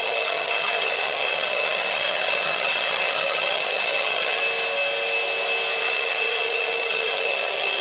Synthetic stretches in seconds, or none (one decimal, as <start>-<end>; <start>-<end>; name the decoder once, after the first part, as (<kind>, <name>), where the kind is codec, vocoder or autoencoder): 0.0-4.4 (vocoder, HiFi-GAN); 5.8-7.8